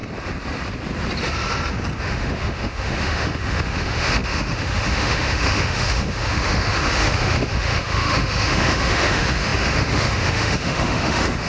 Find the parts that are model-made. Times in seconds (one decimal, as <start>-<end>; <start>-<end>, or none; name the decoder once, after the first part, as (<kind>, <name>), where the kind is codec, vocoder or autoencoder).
2.0-11.5 (autoencoder, DAC-VAE)